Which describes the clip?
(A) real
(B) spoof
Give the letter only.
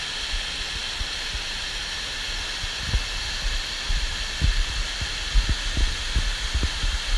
A